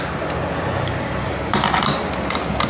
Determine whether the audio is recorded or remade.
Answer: recorded